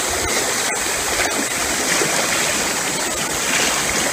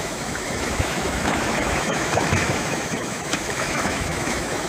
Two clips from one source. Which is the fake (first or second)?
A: second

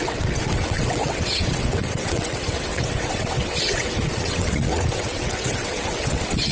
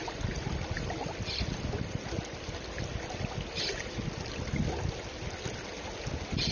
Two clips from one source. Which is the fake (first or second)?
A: first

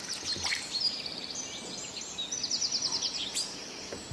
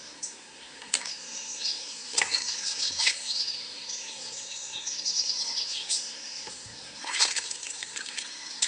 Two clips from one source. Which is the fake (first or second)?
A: second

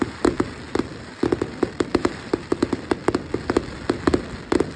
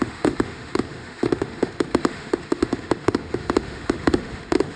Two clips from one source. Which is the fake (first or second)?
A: second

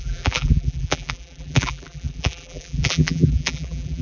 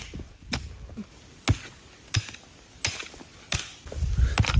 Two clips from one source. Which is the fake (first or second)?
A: first